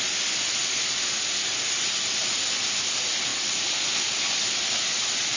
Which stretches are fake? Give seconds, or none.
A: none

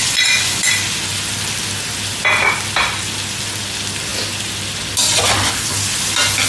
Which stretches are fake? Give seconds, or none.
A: 0.0-0.7 (vocoder, Vocos)

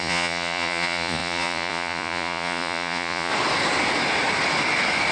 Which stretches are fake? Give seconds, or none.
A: 0.0-3.3 (vocoder, Vocos)

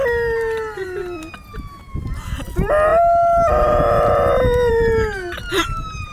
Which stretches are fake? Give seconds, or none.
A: none

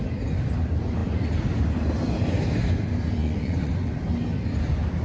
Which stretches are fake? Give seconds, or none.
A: 3.2-3.9 (vocoder, Vocos)

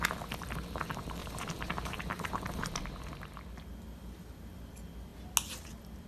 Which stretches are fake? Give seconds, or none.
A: 1.2-2.8 (vocoder, BigVGAN v2)